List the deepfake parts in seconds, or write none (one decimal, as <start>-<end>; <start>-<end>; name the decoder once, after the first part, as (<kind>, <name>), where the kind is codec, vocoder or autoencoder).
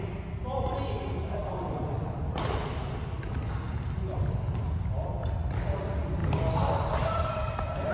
none